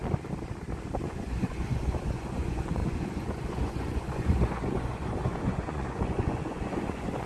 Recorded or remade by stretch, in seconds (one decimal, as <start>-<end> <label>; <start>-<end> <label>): 0.0-1.0 recorded; 1.0-7.3 remade